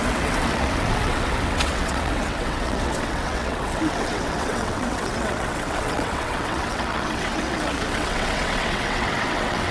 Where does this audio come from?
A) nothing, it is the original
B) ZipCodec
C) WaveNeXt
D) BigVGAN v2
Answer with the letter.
C